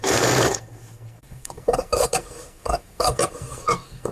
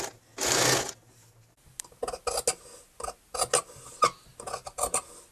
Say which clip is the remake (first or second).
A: first